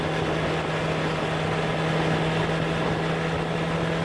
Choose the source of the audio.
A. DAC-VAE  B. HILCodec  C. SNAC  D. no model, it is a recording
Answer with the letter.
D